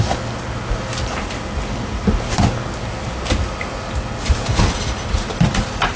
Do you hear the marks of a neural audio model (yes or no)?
no